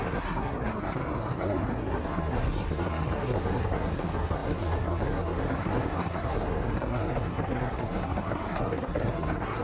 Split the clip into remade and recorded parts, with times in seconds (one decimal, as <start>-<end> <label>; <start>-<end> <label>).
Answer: 0.0-9.6 remade